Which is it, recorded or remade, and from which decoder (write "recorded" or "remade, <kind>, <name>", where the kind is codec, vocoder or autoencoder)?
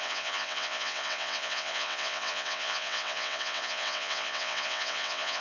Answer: remade, vocoder, WaveNeXt